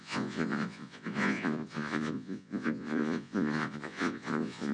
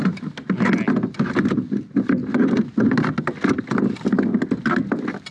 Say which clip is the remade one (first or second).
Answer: first